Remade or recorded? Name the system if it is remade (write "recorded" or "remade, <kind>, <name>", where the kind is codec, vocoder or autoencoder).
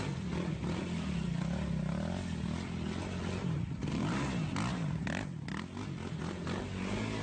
recorded